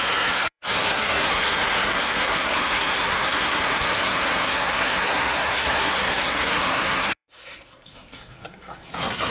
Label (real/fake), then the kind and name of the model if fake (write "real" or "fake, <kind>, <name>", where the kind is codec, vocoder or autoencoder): fake, codec, SNAC